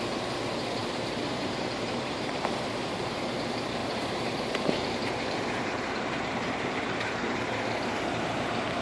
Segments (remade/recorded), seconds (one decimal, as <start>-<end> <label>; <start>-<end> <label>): 0.0-0.8 recorded; 0.8-3.3 remade; 3.3-3.8 recorded; 3.8-7.9 remade; 7.9-8.8 recorded